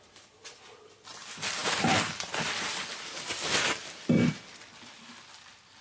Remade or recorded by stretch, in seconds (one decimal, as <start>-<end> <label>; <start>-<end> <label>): 0.0-3.8 recorded; 3.8-4.3 remade; 4.3-5.8 recorded